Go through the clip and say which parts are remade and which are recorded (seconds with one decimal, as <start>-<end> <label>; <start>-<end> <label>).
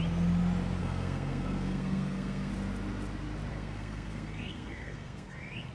0.0-0.8 recorded; 0.8-2.5 remade; 2.5-3.5 recorded; 3.5-5.7 remade